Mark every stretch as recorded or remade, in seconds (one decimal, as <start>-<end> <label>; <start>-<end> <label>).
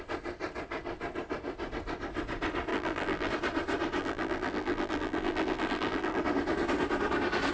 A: 0.0-2.7 recorded; 2.7-3.3 remade; 3.3-4.0 recorded; 4.0-6.2 remade; 6.2-7.5 recorded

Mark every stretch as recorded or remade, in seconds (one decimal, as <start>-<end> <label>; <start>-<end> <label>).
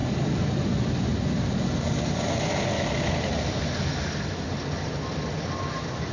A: 0.0-6.1 recorded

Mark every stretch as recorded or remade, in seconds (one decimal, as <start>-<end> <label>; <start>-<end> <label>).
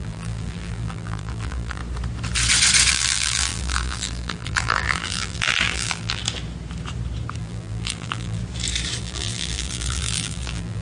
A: 0.0-1.8 remade; 1.8-2.9 recorded; 2.9-6.2 remade; 6.2-7.4 recorded; 7.4-8.4 remade; 8.4-9.0 recorded; 9.0-10.8 remade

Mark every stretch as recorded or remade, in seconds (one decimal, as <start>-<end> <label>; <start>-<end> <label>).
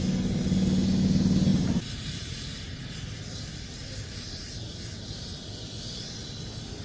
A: 0.0-1.5 recorded; 1.5-2.8 remade; 2.8-3.8 recorded; 3.8-5.4 remade; 5.4-6.8 recorded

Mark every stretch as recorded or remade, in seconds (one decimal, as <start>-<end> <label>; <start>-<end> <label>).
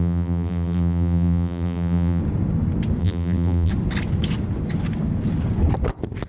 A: 0.0-2.2 remade; 2.2-3.0 recorded; 3.0-3.7 remade; 3.7-6.3 recorded